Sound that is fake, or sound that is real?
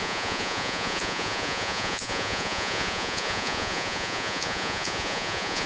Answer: fake